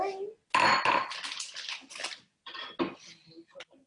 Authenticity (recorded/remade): recorded